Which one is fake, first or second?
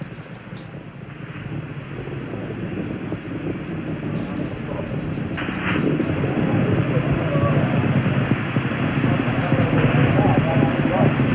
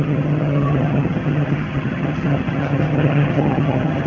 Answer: second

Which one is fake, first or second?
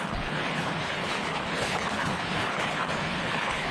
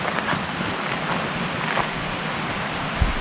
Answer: first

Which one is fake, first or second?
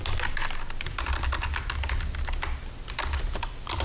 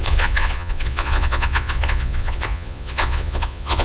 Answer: second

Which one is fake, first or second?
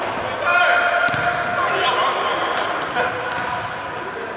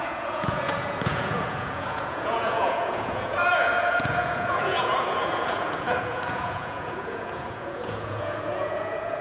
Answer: second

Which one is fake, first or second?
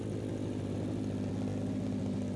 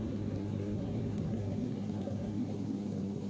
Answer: second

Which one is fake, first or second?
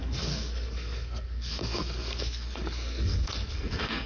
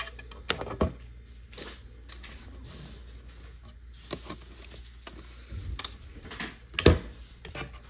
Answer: first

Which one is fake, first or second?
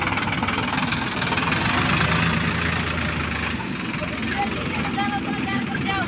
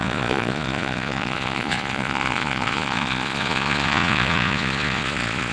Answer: second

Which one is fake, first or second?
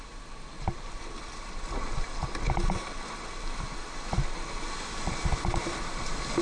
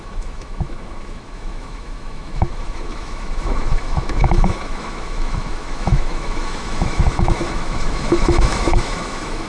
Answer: second